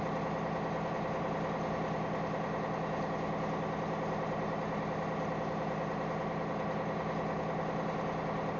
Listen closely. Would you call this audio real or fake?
real